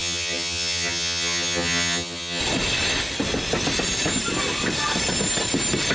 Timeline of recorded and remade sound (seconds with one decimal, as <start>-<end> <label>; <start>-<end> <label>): 0.0-2.4 remade; 2.4-5.9 recorded